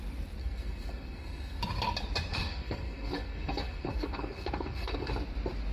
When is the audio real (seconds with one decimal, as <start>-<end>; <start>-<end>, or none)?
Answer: 0.0-0.4; 1.6-2.3; 5.1-5.7